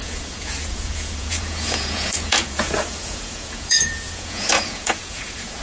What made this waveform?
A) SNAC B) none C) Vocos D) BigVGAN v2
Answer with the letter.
C